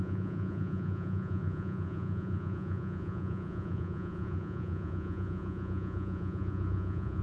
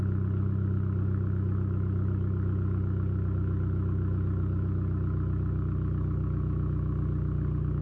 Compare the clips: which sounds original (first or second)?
second